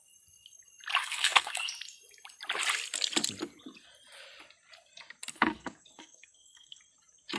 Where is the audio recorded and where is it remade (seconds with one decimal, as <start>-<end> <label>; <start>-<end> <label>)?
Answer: 0.0-1.0 recorded; 1.0-1.7 remade; 1.7-5.3 recorded; 5.3-6.8 remade; 6.8-7.4 recorded